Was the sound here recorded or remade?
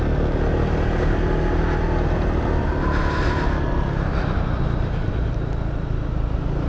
recorded